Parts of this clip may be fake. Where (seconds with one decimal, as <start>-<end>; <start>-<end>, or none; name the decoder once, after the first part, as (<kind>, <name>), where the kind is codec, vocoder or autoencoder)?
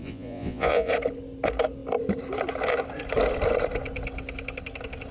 0.0-0.9 (vocoder, Vocos)